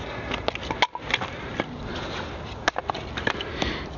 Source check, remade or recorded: recorded